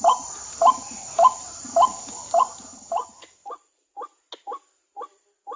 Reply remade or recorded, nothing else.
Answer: recorded